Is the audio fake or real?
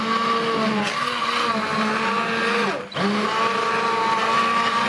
real